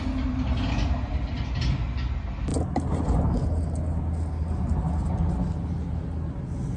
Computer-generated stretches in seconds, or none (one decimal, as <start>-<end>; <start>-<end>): none